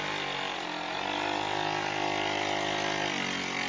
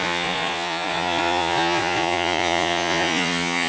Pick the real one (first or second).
first